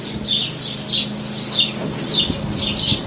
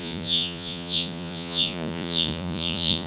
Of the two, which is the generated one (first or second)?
second